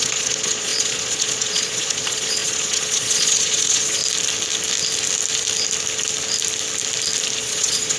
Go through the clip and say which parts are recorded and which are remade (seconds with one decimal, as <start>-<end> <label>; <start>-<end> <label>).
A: 0.0-4.0 remade; 4.0-7.4 recorded; 7.4-8.0 remade